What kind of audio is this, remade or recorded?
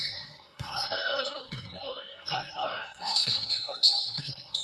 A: remade